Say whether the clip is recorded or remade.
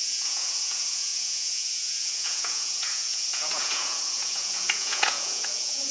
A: remade